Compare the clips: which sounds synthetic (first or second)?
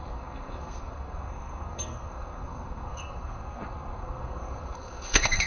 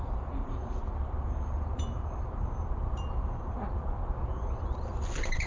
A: first